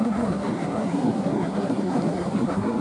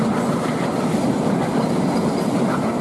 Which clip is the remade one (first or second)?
first